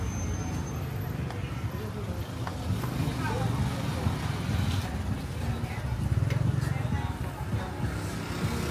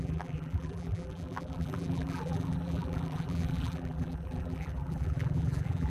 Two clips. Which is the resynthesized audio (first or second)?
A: second